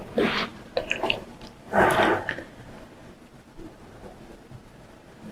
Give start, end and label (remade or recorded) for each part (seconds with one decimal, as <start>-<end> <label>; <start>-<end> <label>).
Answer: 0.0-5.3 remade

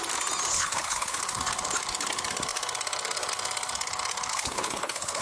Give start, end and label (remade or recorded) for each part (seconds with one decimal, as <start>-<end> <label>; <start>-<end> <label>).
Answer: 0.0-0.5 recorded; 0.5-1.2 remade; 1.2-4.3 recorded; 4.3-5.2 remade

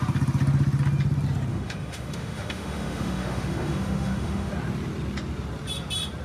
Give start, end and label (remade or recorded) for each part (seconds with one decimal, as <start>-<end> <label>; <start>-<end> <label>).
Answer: 0.0-1.5 recorded; 1.5-4.5 remade; 4.5-6.2 recorded

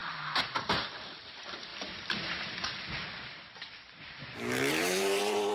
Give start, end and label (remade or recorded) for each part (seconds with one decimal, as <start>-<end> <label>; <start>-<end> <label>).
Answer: 0.0-1.2 recorded; 1.2-1.7 remade; 1.7-4.7 recorded; 4.7-5.5 remade

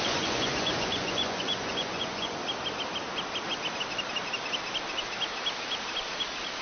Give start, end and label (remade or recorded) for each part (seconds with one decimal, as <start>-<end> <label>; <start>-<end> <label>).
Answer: 0.0-2.4 remade; 2.4-6.6 recorded

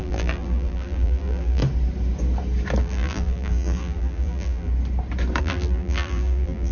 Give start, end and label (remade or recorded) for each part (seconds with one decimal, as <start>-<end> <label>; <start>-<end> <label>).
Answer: 0.0-1.6 remade; 1.6-2.8 recorded; 2.8-4.7 remade; 4.7-5.4 recorded; 5.4-6.7 remade

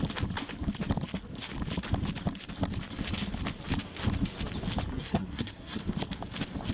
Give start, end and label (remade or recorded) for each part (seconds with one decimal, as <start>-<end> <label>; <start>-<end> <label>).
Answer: 0.0-4.9 recorded; 4.9-5.8 remade; 5.8-6.7 recorded